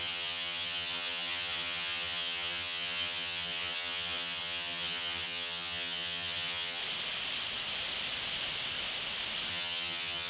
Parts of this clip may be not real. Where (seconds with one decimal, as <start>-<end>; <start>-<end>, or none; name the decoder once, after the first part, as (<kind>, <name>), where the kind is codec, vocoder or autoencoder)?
0.0-6.8 (vocoder, HiFi-GAN); 9.5-10.3